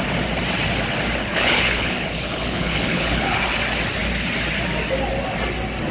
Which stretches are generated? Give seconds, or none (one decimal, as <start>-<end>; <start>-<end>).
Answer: 1.2-3.4